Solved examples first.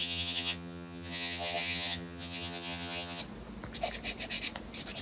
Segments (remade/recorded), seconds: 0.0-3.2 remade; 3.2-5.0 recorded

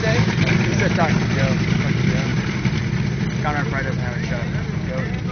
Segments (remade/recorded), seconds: 0.0-5.3 recorded